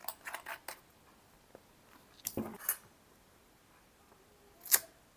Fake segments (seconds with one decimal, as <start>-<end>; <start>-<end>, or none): none